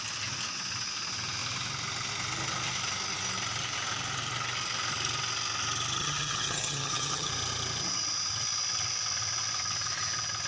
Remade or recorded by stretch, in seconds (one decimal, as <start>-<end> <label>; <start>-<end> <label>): 0.0-6.0 recorded; 6.0-7.3 remade; 7.3-10.5 recorded